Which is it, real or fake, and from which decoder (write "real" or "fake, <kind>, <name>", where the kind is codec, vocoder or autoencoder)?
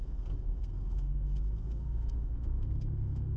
fake, codec, SNAC